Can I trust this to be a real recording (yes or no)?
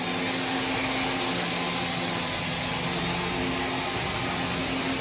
yes